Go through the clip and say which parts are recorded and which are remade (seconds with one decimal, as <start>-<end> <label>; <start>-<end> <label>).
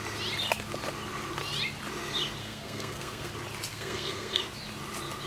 0.0-2.4 recorded; 2.4-3.3 remade; 3.3-3.7 recorded; 3.7-4.4 remade; 4.4-5.3 recorded